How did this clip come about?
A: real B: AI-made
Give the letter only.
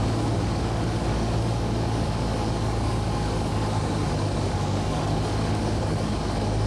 B